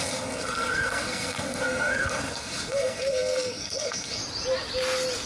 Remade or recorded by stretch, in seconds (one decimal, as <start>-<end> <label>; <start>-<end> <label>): 0.0-4.2 remade; 4.2-5.3 recorded